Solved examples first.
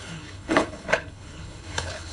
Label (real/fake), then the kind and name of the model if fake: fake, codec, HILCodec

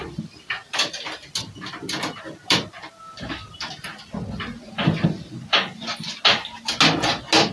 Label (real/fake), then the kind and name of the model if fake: real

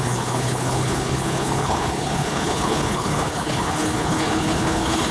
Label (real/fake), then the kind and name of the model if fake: fake, codec, HILCodec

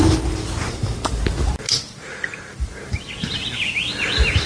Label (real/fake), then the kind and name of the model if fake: real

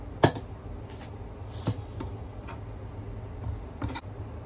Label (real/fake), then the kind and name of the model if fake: real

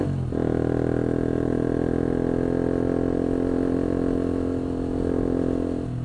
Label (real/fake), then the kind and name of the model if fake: real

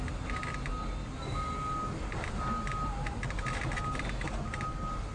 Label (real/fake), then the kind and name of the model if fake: real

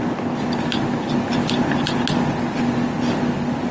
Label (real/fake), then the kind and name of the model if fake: real